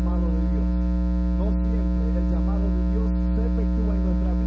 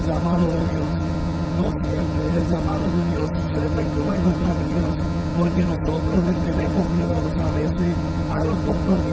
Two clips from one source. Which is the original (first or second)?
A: first